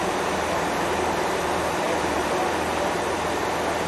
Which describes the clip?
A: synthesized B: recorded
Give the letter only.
A